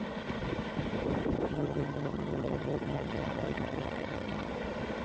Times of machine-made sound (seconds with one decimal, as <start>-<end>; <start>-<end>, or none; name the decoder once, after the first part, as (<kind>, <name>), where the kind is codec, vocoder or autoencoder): 1.5-4.5 (vocoder, HiFi-GAN)